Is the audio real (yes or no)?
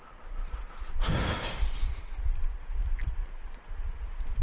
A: yes